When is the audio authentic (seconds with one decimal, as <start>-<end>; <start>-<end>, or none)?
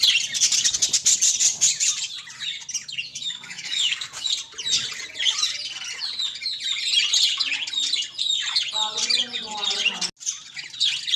0.0-3.1; 4.3-11.2